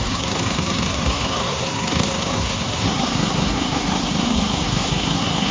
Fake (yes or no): yes